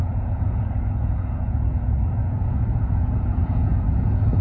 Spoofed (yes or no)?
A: yes